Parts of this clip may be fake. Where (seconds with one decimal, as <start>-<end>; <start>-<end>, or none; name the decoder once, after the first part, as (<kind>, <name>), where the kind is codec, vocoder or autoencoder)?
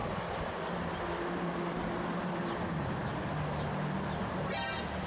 none